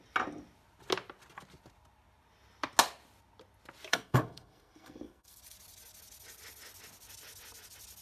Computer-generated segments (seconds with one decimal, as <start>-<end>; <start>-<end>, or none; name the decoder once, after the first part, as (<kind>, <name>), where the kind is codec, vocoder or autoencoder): 3.9-5.4 (codec, SNAC)